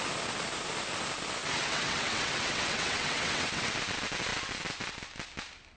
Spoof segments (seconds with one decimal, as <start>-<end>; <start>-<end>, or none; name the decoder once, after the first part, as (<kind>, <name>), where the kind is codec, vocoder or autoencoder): 1.4-3.7 (vocoder, WaveNeXt)